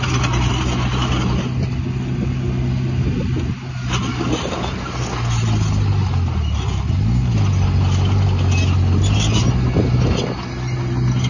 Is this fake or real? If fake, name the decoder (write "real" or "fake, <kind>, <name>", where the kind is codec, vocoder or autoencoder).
real